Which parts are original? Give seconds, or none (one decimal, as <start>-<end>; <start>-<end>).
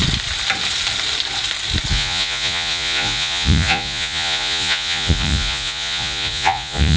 0.0-1.9